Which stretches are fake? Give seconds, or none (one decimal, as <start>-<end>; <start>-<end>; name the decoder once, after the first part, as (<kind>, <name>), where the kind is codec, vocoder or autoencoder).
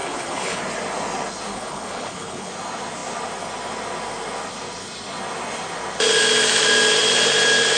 0.0-0.6 (codec, HILCodec); 1.5-2.5